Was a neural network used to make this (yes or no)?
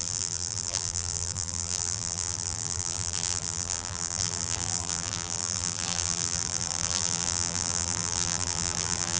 yes